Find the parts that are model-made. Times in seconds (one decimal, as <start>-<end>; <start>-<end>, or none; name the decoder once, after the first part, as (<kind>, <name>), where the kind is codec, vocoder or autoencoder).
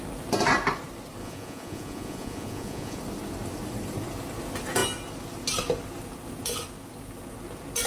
1.2-3.0 (vocoder, Vocos)